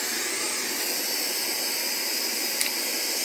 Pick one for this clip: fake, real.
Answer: real